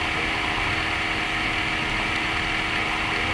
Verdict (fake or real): real